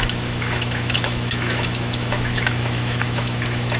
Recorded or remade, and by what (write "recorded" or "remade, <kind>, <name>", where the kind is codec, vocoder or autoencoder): remade, autoencoder, DAC-VAE